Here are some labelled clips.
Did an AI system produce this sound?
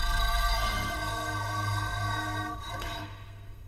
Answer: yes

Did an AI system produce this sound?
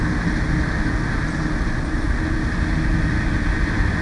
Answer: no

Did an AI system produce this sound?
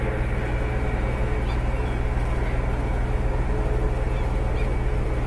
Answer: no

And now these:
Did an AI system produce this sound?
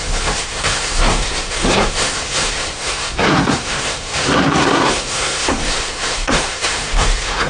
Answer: yes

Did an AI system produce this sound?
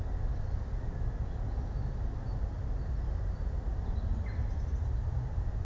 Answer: no